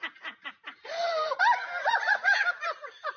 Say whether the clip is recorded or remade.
recorded